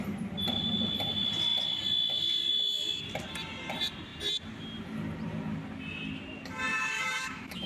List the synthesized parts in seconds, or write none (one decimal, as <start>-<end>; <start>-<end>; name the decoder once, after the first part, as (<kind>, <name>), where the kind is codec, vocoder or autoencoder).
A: 6.7-7.7 (autoencoder, DAC-VAE)